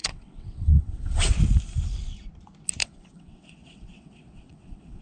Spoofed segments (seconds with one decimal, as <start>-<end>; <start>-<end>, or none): 0.0-1.3; 2.8-5.0